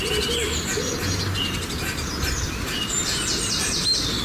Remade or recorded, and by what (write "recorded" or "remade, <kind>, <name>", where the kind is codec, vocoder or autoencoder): recorded